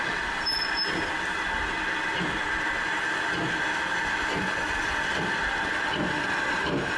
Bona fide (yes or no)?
yes